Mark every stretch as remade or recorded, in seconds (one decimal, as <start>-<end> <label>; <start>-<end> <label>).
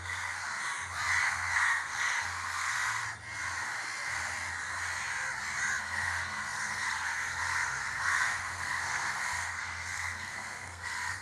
0.0-0.4 remade; 0.4-1.2 recorded; 1.2-3.0 remade; 3.0-5.8 recorded; 5.8-11.2 remade